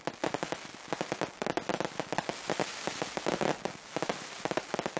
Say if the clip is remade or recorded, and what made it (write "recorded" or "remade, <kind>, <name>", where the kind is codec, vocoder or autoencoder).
recorded